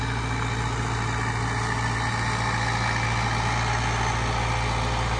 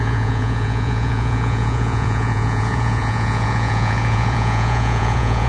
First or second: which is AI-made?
second